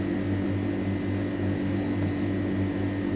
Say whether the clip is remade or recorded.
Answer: recorded